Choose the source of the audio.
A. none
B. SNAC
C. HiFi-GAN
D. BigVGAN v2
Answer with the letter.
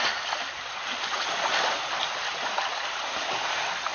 A